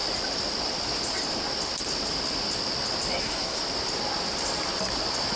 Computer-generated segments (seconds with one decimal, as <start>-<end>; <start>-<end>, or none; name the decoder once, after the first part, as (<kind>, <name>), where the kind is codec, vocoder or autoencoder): 3.2-3.6 (codec, SNAC)